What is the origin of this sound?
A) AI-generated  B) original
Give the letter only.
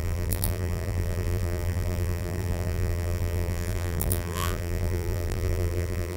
A